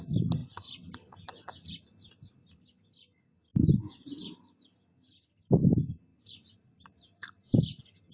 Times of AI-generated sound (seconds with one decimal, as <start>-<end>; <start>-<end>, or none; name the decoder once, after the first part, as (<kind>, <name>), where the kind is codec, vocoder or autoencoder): 0.4-1.2 (vocoder, BigVGAN v2); 3.5-4.8; 6.1-7.4